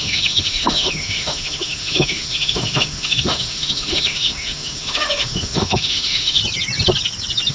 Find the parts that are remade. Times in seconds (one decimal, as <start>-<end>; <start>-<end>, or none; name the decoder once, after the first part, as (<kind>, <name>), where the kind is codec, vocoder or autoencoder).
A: 0.0-6.4 (autoencoder, DAC-VAE)